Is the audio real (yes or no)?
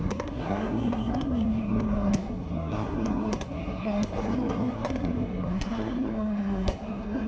no